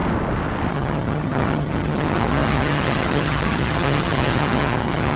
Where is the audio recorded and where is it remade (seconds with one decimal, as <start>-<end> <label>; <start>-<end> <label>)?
0.0-0.7 recorded; 0.7-5.2 remade